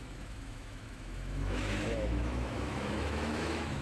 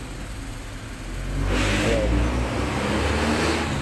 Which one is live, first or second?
second